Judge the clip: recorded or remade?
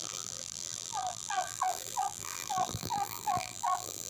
remade